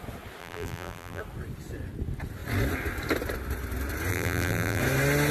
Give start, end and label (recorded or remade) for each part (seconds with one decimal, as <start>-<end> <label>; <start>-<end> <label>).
0.0-0.4 recorded; 0.4-1.2 remade; 1.2-4.1 recorded; 4.1-4.8 remade; 4.8-5.3 recorded